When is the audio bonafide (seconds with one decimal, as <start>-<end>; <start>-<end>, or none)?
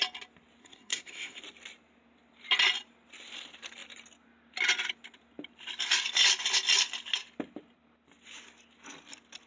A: 0.0-0.6; 1.4-9.5